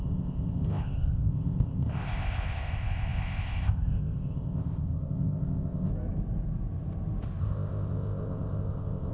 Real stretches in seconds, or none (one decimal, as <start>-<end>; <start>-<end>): 5.9-7.4